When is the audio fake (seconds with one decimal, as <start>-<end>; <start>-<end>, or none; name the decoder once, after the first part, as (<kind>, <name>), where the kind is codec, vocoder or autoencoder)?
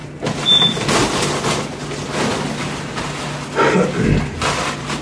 none